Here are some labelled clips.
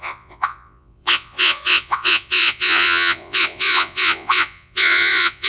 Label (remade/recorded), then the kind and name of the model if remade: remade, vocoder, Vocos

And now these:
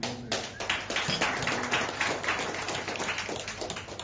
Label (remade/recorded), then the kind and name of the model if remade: recorded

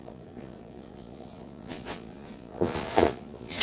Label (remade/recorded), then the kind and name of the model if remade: remade, vocoder, Vocos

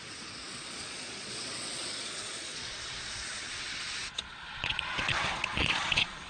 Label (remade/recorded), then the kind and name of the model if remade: remade, vocoder, Vocos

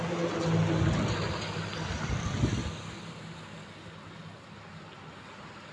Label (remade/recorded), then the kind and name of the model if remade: recorded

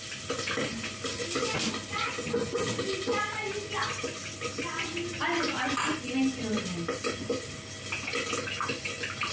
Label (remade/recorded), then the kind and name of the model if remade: recorded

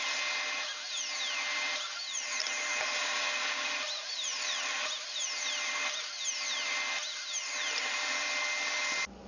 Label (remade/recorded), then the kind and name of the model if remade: recorded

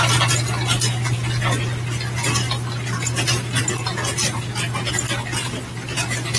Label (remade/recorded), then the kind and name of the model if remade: recorded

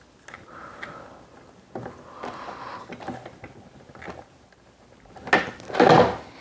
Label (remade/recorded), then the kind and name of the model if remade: recorded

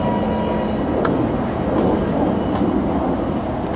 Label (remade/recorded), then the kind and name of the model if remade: recorded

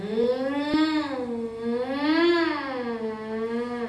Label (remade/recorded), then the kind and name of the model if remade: recorded